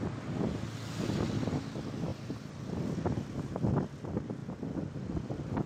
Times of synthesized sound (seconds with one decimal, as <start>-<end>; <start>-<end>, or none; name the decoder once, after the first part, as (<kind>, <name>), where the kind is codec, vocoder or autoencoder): 2.1-2.6 (vocoder, BigVGAN v2)